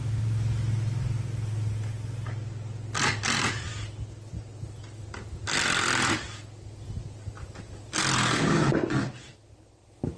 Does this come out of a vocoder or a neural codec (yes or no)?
no